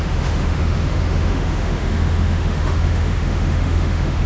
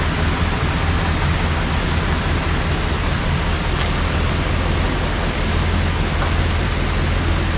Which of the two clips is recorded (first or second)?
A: second